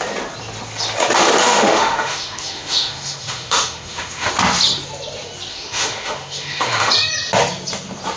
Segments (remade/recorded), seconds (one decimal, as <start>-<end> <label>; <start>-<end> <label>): 0.0-1.4 recorded; 1.4-4.3 remade; 4.3-5.5 recorded; 5.5-6.9 remade; 6.9-8.2 recorded